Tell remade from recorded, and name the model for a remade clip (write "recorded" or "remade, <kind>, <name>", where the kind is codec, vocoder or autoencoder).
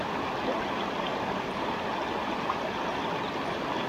recorded